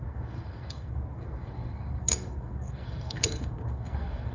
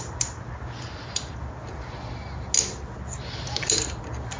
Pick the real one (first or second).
second